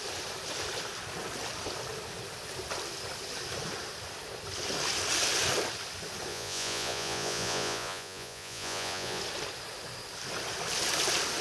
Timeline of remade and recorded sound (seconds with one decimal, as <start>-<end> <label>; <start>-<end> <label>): 0.0-6.3 recorded; 6.3-9.2 remade; 9.2-11.4 recorded